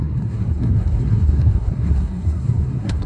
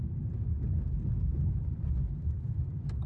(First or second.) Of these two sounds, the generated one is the first